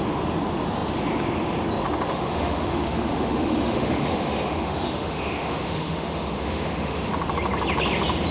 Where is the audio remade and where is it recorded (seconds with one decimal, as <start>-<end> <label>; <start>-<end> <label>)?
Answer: 0.0-2.1 recorded; 2.1-7.1 remade; 7.1-8.3 recorded